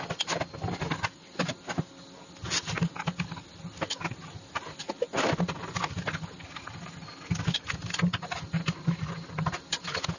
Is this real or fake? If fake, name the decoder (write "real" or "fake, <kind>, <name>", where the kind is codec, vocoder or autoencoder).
real